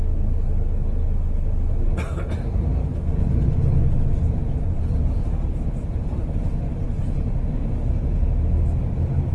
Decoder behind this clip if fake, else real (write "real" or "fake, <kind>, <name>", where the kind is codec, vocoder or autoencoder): real